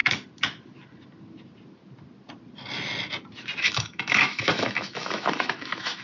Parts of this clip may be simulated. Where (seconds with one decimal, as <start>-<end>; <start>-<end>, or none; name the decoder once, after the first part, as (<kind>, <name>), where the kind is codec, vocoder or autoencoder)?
3.6-6.0 (autoencoder, DAC-VAE)